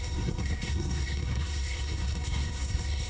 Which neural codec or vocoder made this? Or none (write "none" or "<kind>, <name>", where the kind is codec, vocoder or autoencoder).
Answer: codec, SNAC